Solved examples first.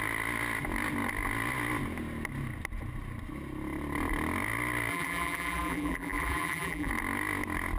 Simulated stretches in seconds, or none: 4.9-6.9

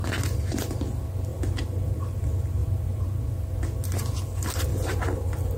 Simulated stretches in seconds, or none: 1.3-2.2; 2.6-3.2

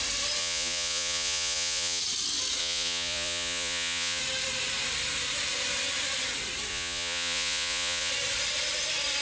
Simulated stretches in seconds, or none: 0.4-2.0; 2.6-4.2; 6.7-8.1

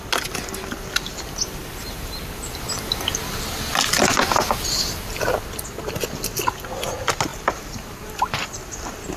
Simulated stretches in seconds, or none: 1.6-2.2; 7.3-8.2

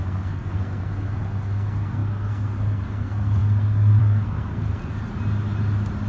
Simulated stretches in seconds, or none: 0.0-4.8